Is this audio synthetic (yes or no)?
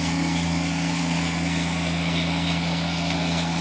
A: yes